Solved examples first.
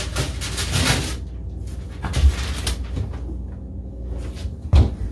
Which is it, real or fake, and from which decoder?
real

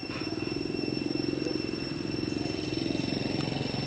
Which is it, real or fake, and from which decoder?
real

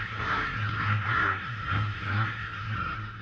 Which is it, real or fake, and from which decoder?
fake, codec, SNAC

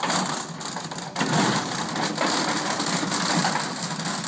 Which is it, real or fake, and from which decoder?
real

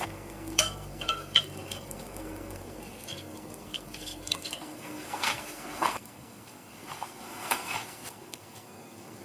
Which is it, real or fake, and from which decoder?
fake, codec, SNAC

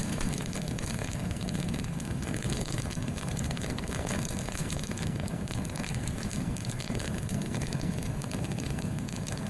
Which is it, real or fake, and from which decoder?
fake, codec, SNAC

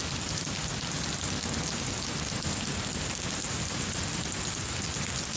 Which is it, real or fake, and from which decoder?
real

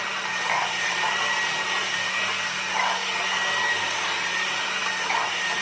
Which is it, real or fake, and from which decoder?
real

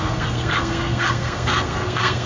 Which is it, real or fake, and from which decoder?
fake, codec, SNAC